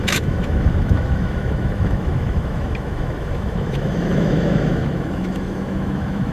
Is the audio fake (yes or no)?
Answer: yes